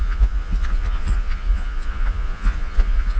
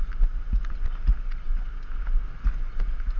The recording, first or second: second